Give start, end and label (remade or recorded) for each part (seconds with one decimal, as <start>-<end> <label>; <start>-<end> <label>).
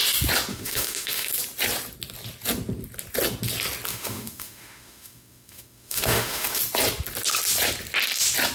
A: 0.0-0.5 recorded; 0.5-1.3 remade; 1.3-3.9 recorded; 3.9-6.6 remade; 6.6-8.5 recorded